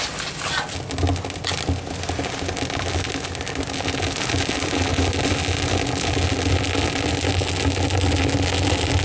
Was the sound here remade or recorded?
recorded